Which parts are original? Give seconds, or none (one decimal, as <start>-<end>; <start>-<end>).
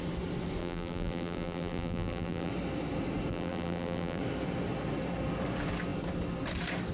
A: 0.0-0.6; 2.5-3.3; 4.2-6.9